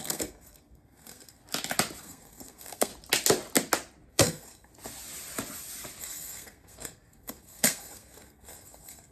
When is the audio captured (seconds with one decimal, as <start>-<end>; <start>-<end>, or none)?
1.4-2.0; 2.9-4.1; 4.7-6.0